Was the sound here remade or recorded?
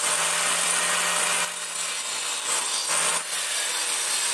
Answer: recorded